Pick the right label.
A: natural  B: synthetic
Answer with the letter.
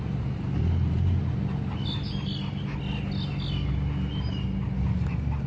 A